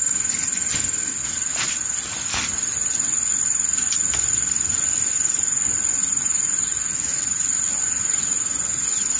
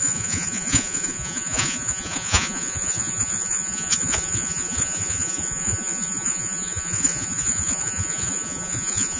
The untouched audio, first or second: first